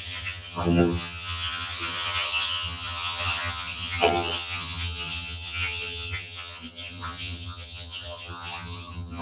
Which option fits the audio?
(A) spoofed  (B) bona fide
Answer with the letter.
A